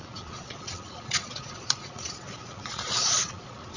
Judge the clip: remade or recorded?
remade